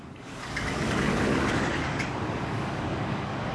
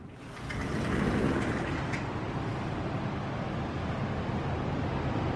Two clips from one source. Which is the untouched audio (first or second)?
second